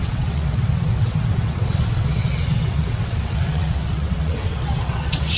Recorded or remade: remade